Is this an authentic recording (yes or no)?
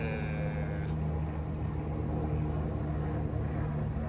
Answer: yes